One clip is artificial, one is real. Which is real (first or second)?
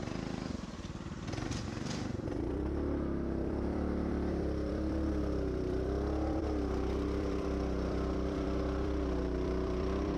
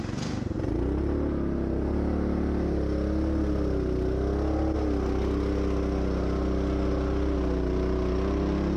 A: second